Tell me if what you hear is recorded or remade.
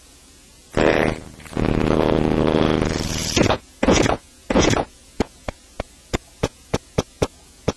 remade